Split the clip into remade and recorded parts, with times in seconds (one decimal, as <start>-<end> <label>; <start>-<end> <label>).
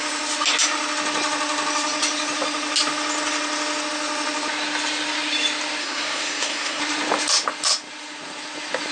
0.0-5.8 recorded; 5.8-6.8 remade; 6.8-8.9 recorded